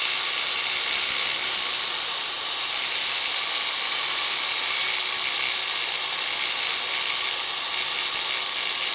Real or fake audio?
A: real